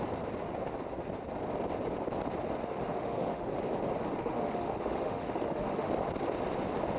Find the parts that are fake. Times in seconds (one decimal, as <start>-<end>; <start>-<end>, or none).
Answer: 2.6-3.5; 4.2-5.9